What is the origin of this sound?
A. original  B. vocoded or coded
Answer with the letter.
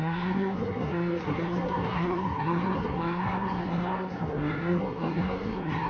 B